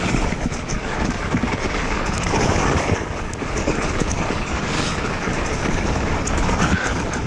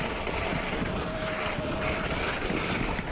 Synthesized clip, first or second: first